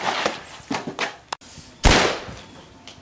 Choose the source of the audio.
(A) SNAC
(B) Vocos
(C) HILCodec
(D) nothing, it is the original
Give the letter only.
D